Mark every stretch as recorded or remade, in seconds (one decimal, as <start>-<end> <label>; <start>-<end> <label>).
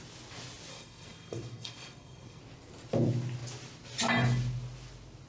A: 0.0-0.7 recorded; 0.7-2.4 remade; 2.4-5.3 recorded